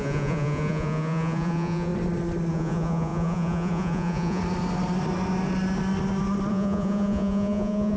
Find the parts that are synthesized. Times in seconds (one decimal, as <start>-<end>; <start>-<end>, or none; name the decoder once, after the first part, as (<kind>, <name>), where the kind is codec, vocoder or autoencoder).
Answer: 0.0-1.9 (vocoder, Vocos); 2.5-4.4; 6.5-8.0